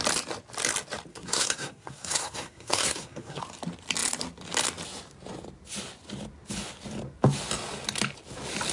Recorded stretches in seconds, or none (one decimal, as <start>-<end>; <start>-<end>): 0.0-1.1; 3.4-8.7